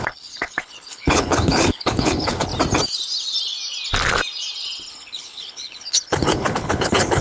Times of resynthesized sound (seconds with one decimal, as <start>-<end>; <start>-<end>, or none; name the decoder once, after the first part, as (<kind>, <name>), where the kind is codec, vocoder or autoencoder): 0.0-2.5 (codec, HILCodec); 4.9-7.2